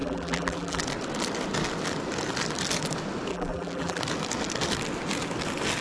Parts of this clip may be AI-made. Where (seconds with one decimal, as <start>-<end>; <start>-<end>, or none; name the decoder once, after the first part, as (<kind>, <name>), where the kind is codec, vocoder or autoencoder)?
0.0-0.8 (vocoder, BigVGAN v2); 3.3-4.0

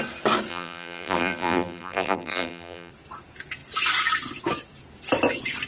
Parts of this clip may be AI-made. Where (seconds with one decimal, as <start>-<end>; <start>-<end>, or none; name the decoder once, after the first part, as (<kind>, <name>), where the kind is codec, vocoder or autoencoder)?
0.5-2.9 (vocoder, BigVGAN v2)

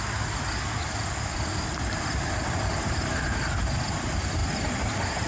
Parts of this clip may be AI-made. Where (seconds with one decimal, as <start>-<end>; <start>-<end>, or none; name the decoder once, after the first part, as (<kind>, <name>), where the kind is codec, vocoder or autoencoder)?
0.8-2.7 (vocoder, BigVGAN v2); 4.4-5.3